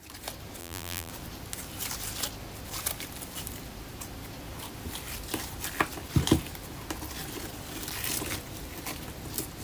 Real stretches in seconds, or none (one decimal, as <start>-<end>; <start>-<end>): 0.0-0.6; 1.1-9.6